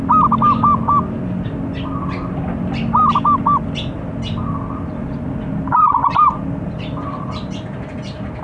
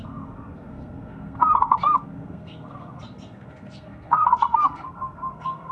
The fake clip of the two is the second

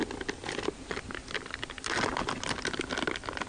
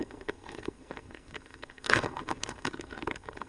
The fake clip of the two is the second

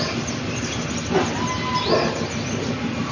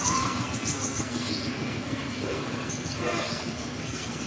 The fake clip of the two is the second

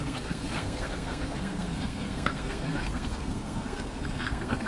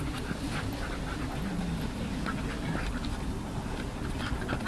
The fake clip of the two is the first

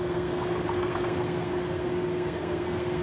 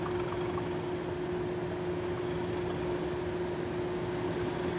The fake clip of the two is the first